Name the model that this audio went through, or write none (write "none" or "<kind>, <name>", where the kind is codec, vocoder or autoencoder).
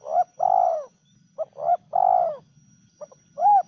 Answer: none